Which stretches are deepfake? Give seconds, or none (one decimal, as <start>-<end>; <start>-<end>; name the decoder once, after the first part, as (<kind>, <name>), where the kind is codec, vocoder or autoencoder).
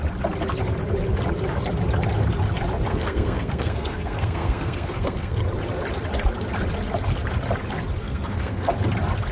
2.9-5.4 (codec, SNAC); 8.0-8.7